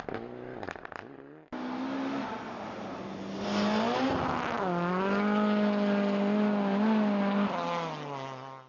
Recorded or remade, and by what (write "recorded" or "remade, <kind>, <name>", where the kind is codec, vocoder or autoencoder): recorded